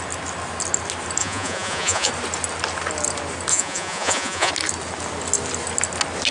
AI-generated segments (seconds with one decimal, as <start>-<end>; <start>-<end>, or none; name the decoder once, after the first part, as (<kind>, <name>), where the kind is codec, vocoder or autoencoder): 1.2-2.1 (vocoder, Vocos); 3.5-4.5